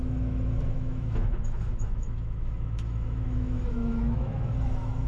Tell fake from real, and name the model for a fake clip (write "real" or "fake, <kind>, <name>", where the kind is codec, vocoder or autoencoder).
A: fake, autoencoder, DAC-VAE